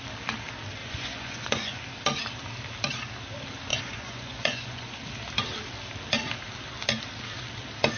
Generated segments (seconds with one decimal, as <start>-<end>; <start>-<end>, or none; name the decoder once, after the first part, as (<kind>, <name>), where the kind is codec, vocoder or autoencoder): 0.8-1.8 (vocoder, Vocos); 3.7-5.0